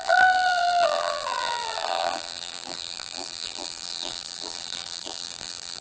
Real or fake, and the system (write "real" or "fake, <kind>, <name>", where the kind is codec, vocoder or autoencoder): fake, vocoder, BigVGAN v2